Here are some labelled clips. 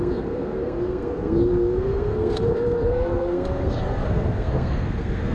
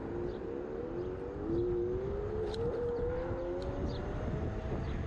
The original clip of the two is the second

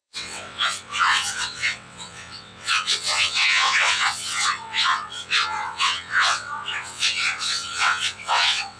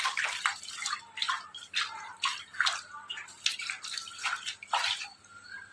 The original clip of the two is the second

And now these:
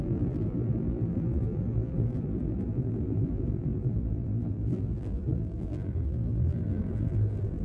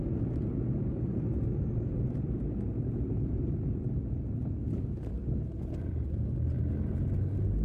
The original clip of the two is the second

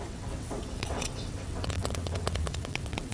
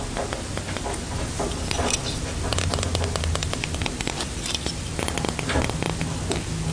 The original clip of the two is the second